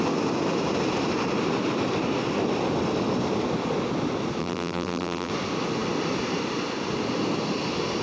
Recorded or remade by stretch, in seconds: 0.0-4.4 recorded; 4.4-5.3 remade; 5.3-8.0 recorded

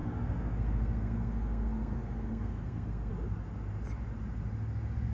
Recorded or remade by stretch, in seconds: 0.0-3.1 remade; 3.1-5.1 recorded

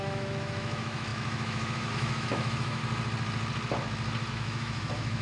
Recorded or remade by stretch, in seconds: 0.0-2.8 remade; 2.8-4.3 recorded; 4.3-5.2 remade

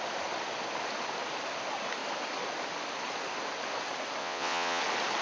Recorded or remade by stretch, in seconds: 0.0-4.2 recorded; 4.2-4.8 remade; 4.8-5.2 recorded

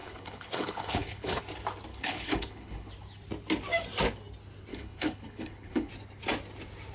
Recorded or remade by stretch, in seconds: 0.0-1.4 remade; 1.4-1.9 recorded; 1.9-2.9 remade; 2.9-4.7 recorded; 4.7-5.9 remade; 5.9-6.9 recorded

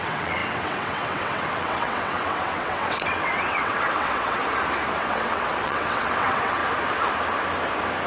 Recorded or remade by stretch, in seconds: 0.0-4.4 remade; 4.4-5.0 recorded; 5.0-6.6 remade; 6.6-8.1 recorded

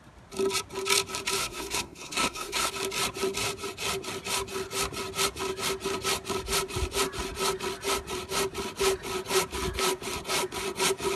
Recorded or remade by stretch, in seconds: 0.0-1.4 recorded; 1.4-2.7 remade; 2.7-11.1 recorded